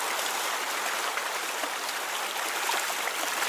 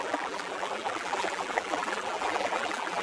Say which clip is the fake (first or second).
second